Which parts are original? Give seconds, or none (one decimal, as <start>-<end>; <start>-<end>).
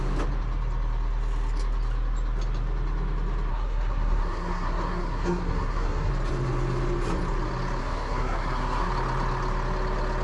0.0-3.5; 6.1-7.8; 8.9-10.2